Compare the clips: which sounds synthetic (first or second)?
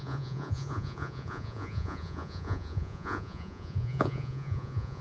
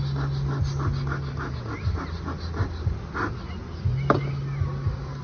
first